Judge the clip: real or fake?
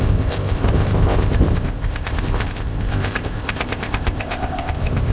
fake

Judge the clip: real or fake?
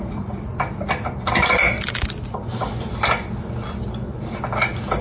real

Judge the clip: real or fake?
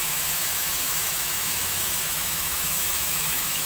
fake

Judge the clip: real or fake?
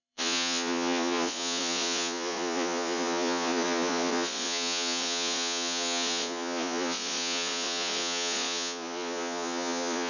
fake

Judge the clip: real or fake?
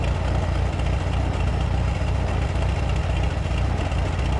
real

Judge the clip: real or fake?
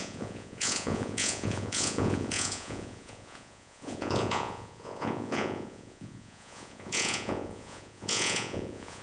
fake